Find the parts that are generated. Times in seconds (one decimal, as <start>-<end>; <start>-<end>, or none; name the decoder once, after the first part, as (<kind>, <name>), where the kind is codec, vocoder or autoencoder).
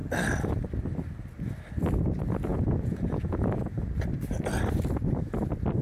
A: 2.5-3.7 (vocoder, Vocos)